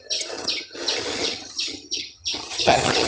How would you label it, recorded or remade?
remade